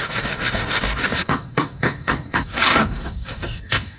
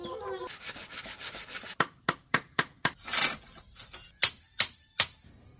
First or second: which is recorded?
second